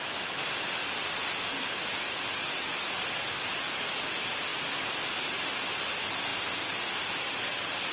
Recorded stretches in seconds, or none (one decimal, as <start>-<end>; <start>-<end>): 0.0-7.9